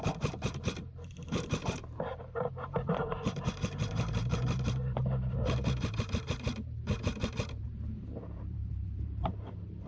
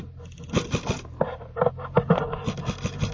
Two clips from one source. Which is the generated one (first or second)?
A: first